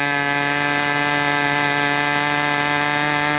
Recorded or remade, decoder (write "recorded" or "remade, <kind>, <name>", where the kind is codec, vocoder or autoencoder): recorded